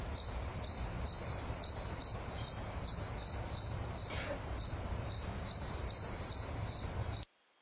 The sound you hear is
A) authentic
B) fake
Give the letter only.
A